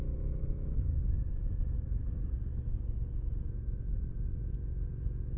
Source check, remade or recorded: remade